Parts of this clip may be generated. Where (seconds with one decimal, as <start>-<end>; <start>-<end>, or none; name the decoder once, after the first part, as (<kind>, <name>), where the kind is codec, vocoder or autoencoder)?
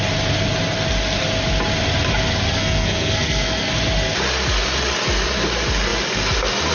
2.5-3.7 (codec, SNAC)